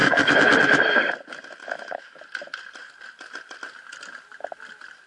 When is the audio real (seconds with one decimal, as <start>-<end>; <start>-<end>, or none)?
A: 1.0-1.6; 2.2-5.1